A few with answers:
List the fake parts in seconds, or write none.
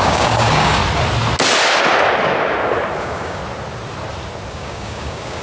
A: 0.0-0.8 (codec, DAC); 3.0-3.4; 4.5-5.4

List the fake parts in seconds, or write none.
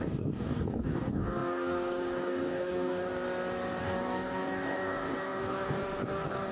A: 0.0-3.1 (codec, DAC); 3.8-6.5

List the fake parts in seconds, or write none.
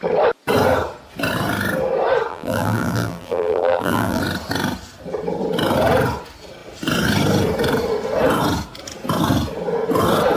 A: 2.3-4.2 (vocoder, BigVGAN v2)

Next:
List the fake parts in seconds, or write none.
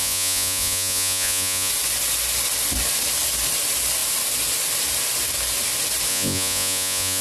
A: 0.0-1.7 (vocoder, Vocos); 6.1-7.2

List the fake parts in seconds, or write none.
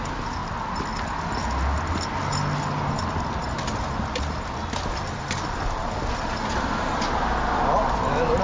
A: none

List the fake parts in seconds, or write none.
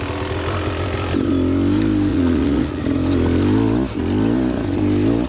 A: 2.1-2.8 (vocoder, Vocos)